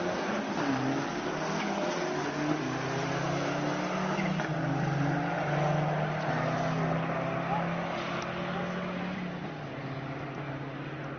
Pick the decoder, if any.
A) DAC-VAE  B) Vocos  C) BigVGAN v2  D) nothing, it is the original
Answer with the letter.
D